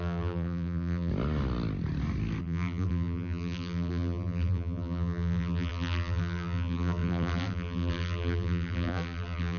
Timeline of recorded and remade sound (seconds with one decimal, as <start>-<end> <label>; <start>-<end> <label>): 0.0-1.1 remade; 1.1-2.4 recorded; 2.4-9.6 remade